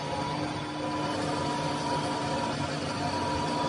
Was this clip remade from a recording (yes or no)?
no